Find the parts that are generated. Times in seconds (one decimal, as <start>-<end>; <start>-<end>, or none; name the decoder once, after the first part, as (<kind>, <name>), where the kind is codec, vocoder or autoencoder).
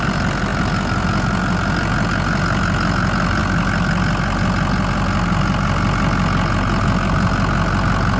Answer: none